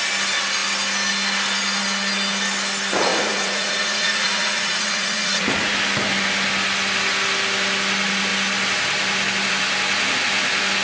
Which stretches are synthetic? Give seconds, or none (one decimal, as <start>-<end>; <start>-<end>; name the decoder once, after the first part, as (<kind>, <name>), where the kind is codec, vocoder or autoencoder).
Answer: 3.1-5.7 (vocoder, Vocos)